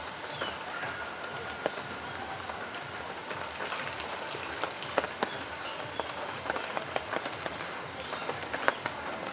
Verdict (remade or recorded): recorded